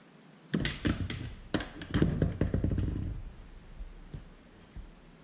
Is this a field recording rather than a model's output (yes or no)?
yes